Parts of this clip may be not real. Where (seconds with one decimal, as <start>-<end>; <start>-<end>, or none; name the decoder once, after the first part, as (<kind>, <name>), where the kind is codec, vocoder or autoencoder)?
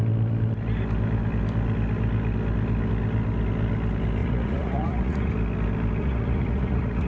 4.2-5.3 (vocoder, Vocos); 6.0-7.1